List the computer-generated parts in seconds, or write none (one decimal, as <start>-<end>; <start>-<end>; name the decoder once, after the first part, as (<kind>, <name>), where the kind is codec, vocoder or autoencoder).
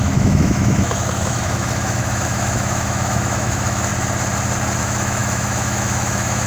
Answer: 0.0-3.9 (autoencoder, DAC-VAE); 4.8-6.5